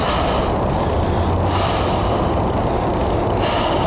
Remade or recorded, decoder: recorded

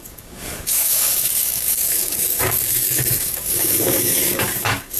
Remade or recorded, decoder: remade, codec, DAC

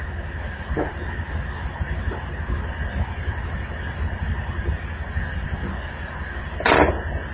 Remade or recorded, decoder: recorded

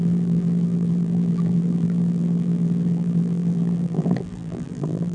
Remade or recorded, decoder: remade, vocoder, BigVGAN v2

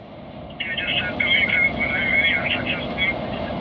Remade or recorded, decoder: recorded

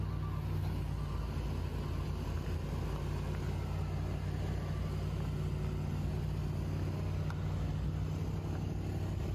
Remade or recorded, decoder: recorded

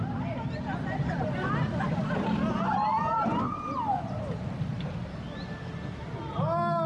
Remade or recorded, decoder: recorded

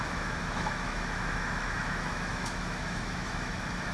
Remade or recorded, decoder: remade, autoencoder, DAC-VAE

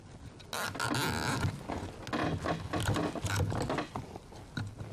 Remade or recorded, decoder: recorded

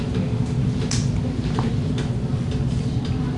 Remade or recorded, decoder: recorded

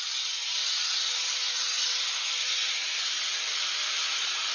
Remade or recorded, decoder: recorded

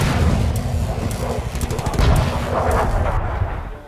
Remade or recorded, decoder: recorded